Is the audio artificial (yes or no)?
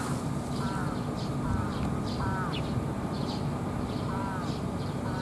no